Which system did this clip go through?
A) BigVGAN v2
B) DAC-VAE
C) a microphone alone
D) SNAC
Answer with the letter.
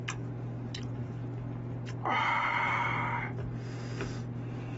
C